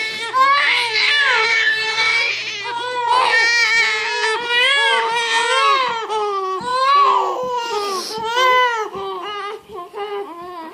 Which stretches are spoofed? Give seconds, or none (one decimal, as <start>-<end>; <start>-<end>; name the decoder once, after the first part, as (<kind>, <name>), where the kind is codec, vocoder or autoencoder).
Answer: 1.4-2.3 (codec, DAC)